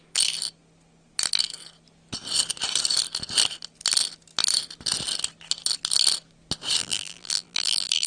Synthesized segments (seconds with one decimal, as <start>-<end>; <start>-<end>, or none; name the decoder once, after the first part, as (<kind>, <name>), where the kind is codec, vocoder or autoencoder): 6.8-8.1 (vocoder, BigVGAN v2)